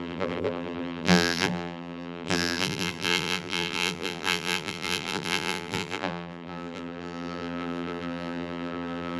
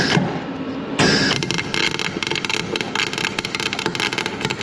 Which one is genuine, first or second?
second